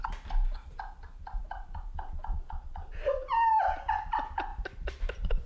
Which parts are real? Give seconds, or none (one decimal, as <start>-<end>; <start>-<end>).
0.0-4.5